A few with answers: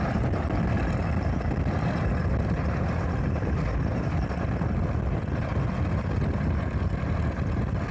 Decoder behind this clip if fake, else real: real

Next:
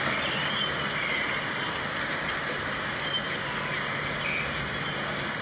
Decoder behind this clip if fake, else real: real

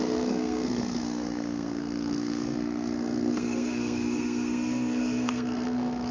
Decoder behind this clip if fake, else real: fake, codec, SNAC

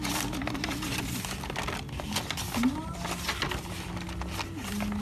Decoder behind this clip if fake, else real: real